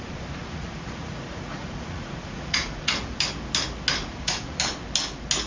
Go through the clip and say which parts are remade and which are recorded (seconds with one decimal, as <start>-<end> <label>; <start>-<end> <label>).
0.0-0.4 recorded; 0.4-3.1 remade; 3.1-4.0 recorded; 4.0-4.6 remade; 4.6-5.5 recorded